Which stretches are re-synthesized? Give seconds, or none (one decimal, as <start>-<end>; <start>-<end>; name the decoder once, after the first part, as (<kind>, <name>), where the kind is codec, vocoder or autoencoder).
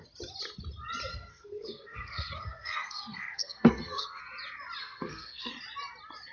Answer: 1.1-4.2 (codec, SNAC); 4.8-5.5